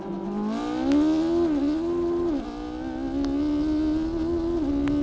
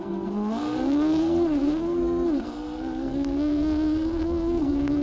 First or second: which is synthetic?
second